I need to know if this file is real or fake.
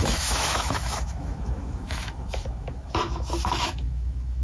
fake